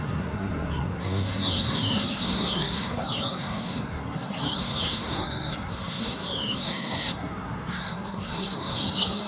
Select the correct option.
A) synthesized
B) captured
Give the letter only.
A